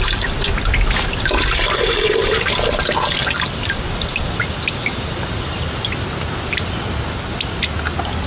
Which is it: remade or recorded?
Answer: recorded